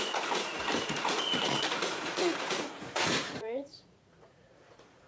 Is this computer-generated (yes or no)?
yes